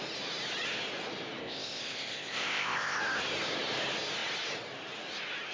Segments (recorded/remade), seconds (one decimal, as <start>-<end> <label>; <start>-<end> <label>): 0.0-1.4 recorded; 1.4-3.0 remade; 3.0-5.5 recorded